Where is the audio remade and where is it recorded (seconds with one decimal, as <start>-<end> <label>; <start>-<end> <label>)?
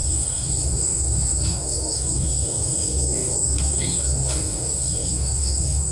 0.0-5.9 remade